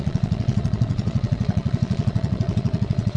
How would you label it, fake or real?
fake